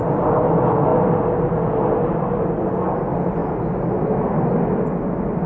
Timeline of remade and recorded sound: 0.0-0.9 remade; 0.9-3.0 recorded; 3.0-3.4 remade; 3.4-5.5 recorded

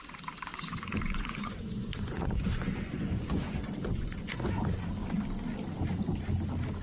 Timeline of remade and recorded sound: 0.0-0.5 recorded; 0.5-4.6 remade; 4.6-6.8 recorded

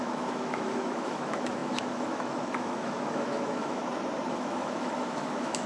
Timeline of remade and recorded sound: 0.0-3.8 remade; 3.8-4.3 recorded; 4.3-5.7 remade